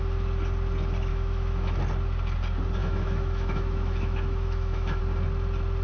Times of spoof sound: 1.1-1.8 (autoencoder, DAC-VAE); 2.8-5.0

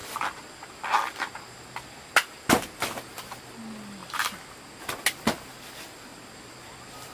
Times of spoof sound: none

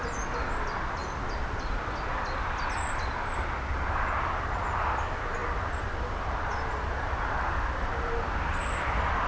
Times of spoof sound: none

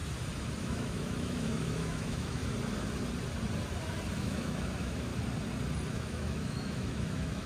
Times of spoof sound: 0.6-2.4 (autoencoder, DAC-VAE); 4.2-5.1; 5.9-7.5